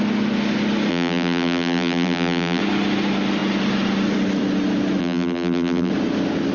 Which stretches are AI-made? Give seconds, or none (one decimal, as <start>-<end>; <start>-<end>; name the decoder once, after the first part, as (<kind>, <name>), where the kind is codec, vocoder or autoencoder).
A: 0.9-2.6 (vocoder, BigVGAN v2); 5.0-5.9